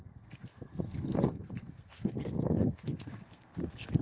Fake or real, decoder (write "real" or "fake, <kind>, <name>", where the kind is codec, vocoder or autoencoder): fake, codec, SNAC